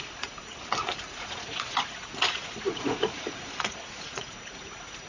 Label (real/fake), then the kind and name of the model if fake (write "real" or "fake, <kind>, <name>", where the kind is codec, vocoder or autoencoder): fake, vocoder, Vocos